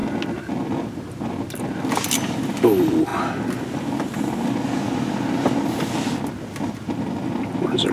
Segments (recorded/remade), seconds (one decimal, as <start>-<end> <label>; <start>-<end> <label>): 0.0-7.9 recorded